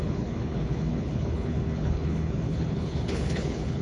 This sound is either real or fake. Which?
fake